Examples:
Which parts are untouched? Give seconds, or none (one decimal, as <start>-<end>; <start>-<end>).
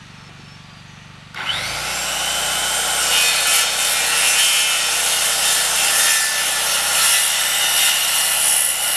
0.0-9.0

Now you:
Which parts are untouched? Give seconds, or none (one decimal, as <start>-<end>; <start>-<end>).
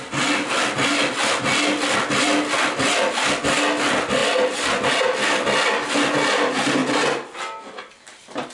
0.0-8.5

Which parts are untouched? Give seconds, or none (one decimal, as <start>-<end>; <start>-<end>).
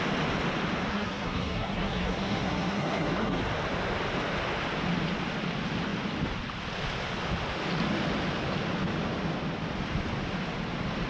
0.0-0.9; 3.4-11.1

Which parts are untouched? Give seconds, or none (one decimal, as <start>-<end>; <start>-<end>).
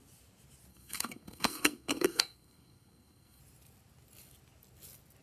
0.0-0.7; 3.4-5.2